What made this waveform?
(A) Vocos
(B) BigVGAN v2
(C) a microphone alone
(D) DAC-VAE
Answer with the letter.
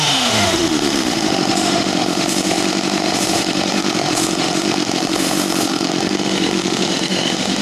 D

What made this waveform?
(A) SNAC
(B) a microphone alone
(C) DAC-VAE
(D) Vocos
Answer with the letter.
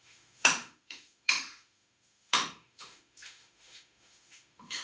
C